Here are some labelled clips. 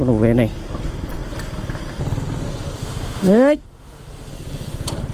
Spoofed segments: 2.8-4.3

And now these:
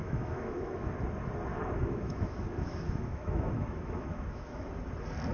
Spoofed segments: 0.0-0.9; 1.5-4.7

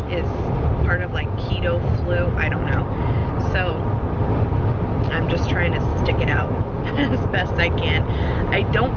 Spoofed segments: 5.9-7.5

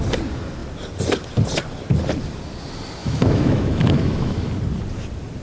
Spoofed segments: 3.0-4.5

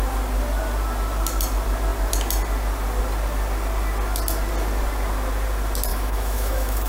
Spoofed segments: 5.9-6.9

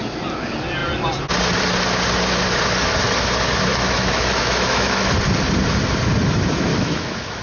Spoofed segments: 3.7-5.1; 6.7-7.4

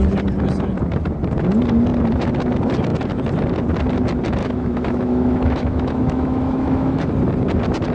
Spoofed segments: 4.4-7.1

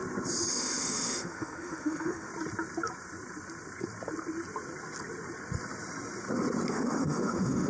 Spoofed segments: 0.5-2.3; 6.7-7.7